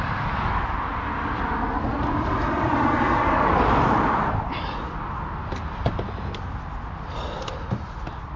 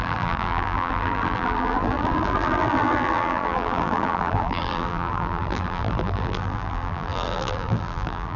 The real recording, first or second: first